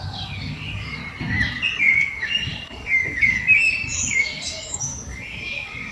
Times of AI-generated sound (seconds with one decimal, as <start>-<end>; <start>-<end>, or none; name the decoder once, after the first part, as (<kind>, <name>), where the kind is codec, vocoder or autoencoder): 0.0-1.0 (codec, DAC); 1.8-5.9